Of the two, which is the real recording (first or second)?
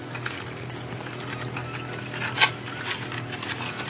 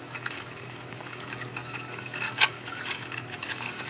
first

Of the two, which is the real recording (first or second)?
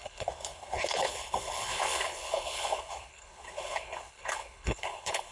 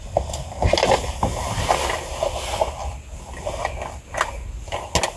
second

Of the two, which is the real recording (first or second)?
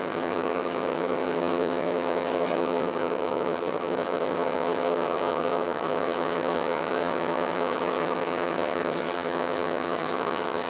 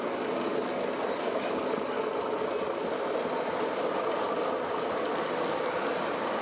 second